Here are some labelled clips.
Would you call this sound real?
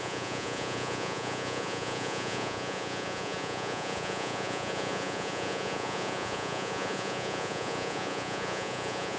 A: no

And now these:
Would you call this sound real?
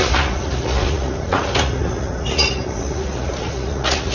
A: no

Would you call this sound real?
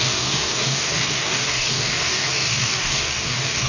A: no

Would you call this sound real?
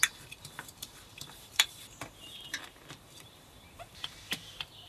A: no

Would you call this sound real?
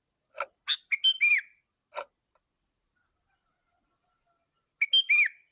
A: yes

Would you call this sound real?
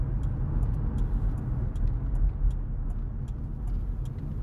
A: yes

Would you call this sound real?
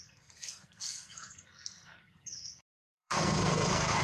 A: no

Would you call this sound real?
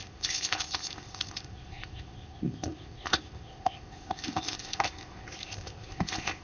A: no